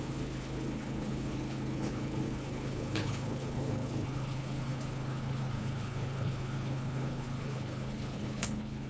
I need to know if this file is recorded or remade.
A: remade